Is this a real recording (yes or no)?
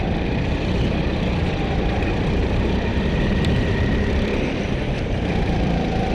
no